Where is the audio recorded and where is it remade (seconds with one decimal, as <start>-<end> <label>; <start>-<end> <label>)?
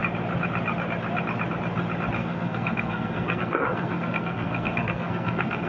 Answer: 0.0-2.2 recorded; 2.2-5.7 remade